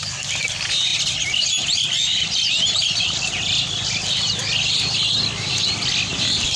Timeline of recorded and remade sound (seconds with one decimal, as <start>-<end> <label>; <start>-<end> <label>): 0.0-4.5 remade; 4.5-6.6 recorded